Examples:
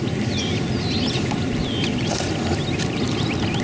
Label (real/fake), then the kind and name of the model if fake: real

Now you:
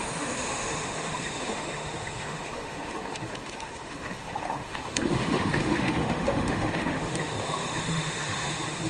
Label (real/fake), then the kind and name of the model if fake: fake, autoencoder, DAC-VAE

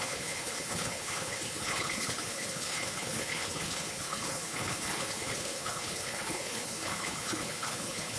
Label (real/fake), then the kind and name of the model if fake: fake, codec, HILCodec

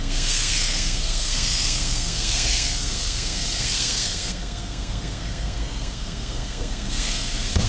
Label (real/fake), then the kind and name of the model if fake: fake, codec, SNAC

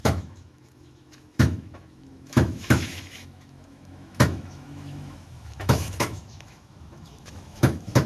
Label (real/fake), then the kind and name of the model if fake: fake, autoencoder, DAC-VAE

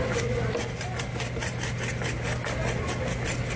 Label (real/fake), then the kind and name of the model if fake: real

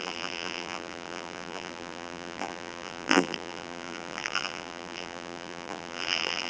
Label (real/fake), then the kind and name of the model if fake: fake, vocoder, BigVGAN v2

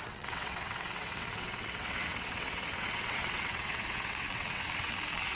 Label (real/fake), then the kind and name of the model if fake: fake, vocoder, WaveNeXt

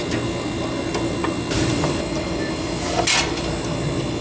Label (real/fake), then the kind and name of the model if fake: real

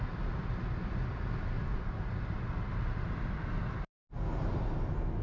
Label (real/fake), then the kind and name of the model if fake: real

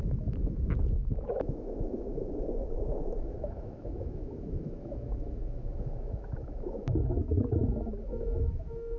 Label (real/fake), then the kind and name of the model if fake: fake, autoencoder, DAC-VAE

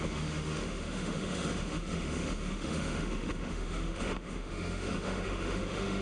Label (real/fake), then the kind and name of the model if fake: fake, autoencoder, DAC-VAE